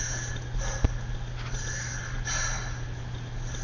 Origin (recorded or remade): recorded